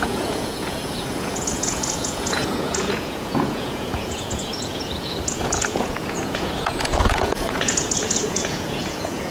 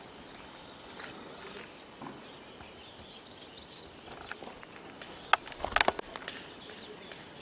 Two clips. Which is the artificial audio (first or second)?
first